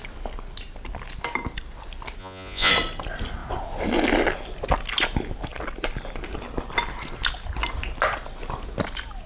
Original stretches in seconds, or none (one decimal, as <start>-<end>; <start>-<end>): 0.0-2.2; 2.7-9.3